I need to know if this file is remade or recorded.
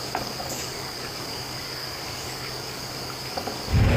remade